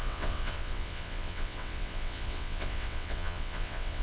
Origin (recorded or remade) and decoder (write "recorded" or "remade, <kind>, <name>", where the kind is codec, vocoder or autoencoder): remade, vocoder, WaveNeXt